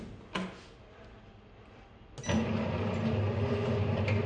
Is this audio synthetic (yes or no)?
no